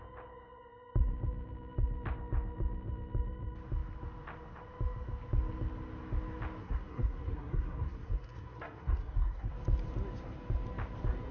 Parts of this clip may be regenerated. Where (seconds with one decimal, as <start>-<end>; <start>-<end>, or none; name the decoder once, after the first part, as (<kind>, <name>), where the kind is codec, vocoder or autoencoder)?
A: 6.6-9.5 (codec, SNAC)